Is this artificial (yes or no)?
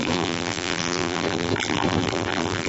yes